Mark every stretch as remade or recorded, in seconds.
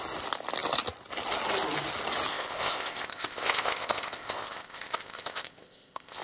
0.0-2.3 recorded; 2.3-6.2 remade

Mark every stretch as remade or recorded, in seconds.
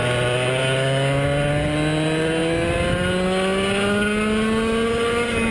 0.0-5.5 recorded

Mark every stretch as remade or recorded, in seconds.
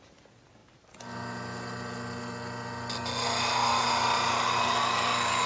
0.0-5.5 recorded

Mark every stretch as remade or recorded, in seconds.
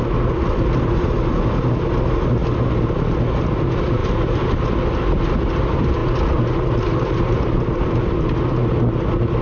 0.0-9.4 recorded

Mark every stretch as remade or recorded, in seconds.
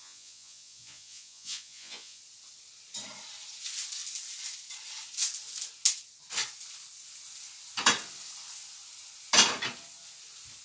0.0-2.2 remade; 2.2-10.6 recorded